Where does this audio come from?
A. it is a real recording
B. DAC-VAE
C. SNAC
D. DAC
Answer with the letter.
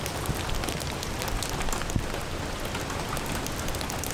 A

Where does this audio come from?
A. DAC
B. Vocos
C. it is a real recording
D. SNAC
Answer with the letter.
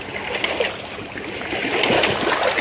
C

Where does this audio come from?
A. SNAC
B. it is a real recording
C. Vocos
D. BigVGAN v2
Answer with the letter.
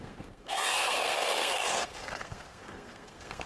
A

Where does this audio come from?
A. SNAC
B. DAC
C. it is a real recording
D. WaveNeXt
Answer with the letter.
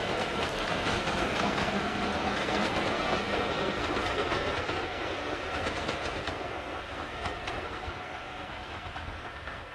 A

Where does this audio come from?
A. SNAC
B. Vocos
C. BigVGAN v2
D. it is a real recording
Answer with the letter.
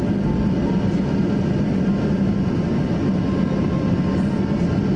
D